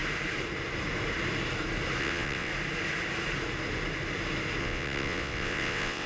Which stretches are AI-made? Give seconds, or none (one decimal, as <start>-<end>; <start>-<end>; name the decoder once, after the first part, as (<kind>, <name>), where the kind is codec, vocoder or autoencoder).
2.0-2.5 (vocoder, WaveNeXt); 4.6-6.1